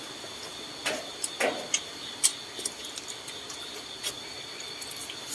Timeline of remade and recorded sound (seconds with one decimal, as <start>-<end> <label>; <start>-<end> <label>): 0.0-5.3 recorded